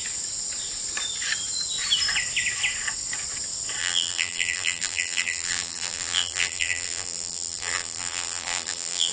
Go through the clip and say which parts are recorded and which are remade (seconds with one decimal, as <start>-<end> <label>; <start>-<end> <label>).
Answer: 0.0-3.8 recorded; 3.8-9.1 remade